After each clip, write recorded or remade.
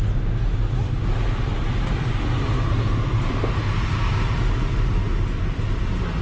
recorded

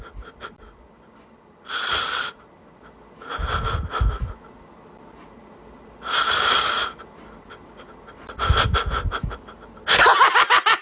recorded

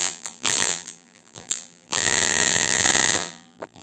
remade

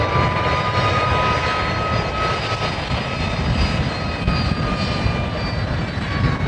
remade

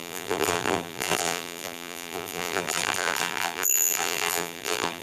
remade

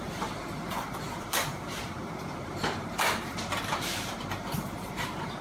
remade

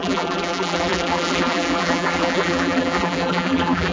remade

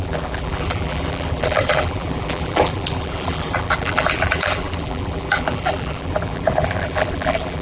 remade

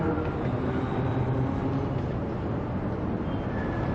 recorded